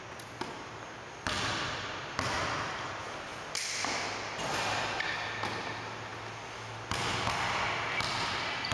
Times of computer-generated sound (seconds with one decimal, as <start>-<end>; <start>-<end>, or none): none